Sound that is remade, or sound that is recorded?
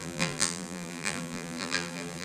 remade